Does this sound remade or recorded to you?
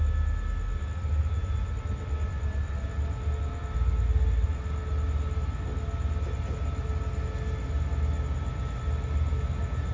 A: recorded